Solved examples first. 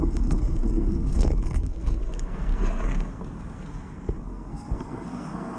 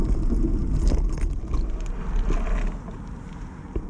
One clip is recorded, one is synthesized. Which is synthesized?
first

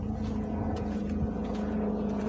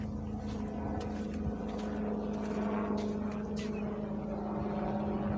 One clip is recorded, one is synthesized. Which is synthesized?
first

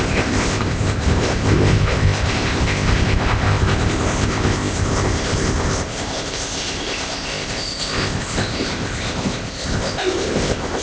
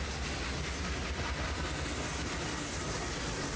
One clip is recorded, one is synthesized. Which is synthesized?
first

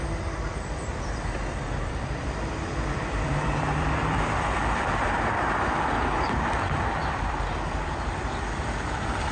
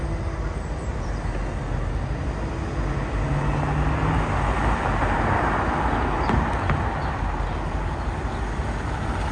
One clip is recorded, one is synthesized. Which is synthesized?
first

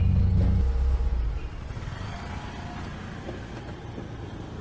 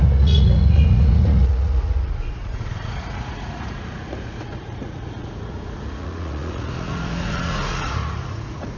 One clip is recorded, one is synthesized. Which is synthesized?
second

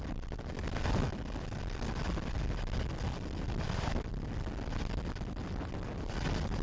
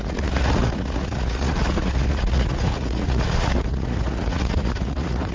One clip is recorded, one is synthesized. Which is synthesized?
second